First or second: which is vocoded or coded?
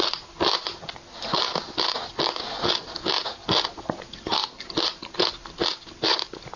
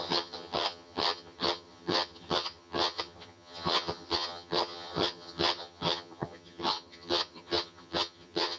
second